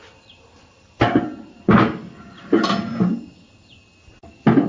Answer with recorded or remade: recorded